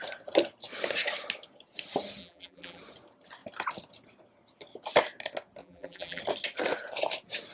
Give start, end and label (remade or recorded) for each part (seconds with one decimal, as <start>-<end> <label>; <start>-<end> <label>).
0.0-2.2 recorded; 2.2-2.8 remade; 2.8-5.6 recorded; 5.6-6.2 remade; 6.2-7.5 recorded